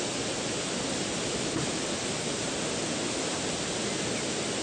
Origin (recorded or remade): recorded